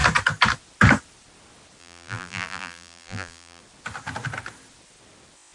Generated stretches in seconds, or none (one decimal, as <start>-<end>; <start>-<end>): 1.8-3.6